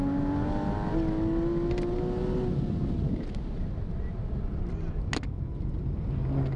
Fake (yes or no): no